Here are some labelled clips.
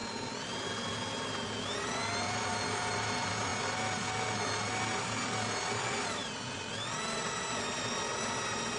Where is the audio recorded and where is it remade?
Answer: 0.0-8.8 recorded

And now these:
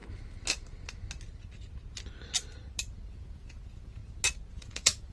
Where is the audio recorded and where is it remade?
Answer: 0.0-3.1 recorded; 3.1-4.0 remade; 4.0-4.5 recorded; 4.5-5.1 remade

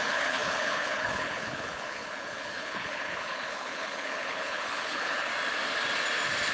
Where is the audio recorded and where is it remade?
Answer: 0.0-5.3 remade; 5.3-6.5 recorded

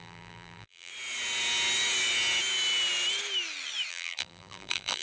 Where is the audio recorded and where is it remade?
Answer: 0.0-0.9 remade; 0.9-3.9 recorded; 3.9-5.0 remade

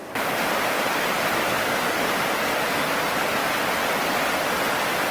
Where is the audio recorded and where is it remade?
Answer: 0.0-1.5 remade; 1.5-5.1 recorded

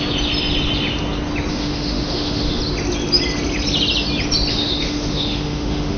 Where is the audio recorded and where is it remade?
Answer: 0.0-1.5 recorded; 1.5-2.6 remade; 2.6-4.5 recorded; 4.5-6.0 remade